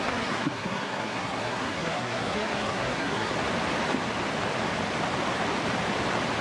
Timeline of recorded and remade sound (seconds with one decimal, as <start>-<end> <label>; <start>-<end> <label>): 0.0-3.3 remade; 3.3-6.4 recorded